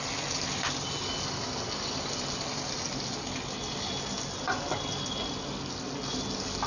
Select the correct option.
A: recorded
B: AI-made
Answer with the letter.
A